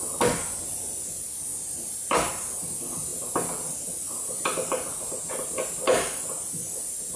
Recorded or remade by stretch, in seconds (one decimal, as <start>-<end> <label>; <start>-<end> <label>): 0.0-1.5 recorded; 1.5-2.3 remade; 2.3-4.5 recorded; 4.5-5.3 remade; 5.3-7.2 recorded